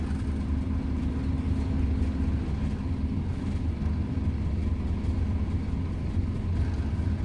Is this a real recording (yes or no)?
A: yes